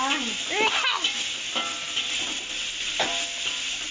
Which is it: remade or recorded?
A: recorded